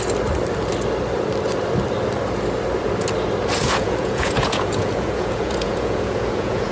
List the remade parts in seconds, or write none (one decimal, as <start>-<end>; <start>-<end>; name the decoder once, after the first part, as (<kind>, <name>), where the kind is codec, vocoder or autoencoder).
3.6-6.7 (vocoder, Vocos)